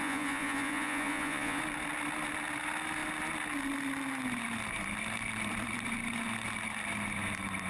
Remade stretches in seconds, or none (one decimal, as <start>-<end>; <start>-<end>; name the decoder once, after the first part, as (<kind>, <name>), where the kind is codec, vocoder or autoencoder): 0.0-1.6 (vocoder, Vocos)